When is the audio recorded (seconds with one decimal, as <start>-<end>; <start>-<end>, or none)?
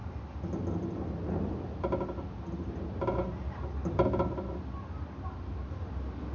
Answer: 0.0-6.3